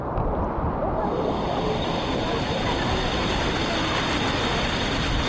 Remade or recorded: recorded